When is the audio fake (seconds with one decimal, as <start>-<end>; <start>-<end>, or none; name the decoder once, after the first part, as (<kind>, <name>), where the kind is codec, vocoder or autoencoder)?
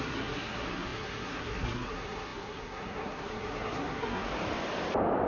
0.0-4.3 (codec, SNAC)